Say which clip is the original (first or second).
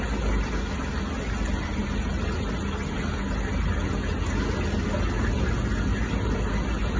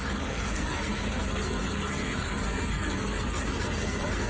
first